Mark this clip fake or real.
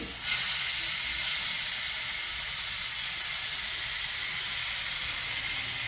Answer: real